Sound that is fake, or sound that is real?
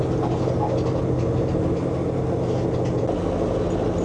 real